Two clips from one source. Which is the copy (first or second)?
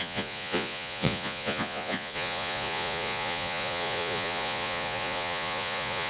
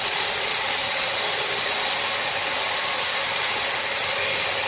first